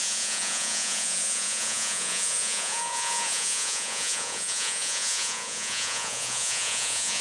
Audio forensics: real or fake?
fake